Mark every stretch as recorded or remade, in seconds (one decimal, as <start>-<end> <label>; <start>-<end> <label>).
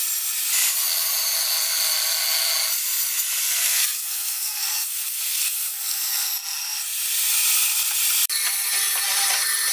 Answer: 0.0-3.4 recorded; 3.4-6.3 remade; 6.3-9.7 recorded